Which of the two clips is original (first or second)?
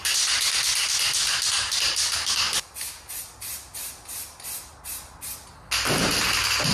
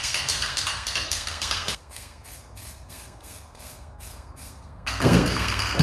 first